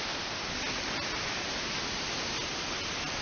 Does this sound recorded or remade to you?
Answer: recorded